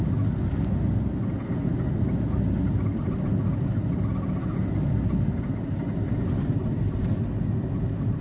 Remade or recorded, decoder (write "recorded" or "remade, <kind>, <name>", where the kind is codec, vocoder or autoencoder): recorded